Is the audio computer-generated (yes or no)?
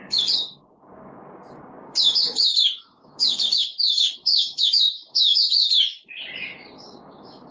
yes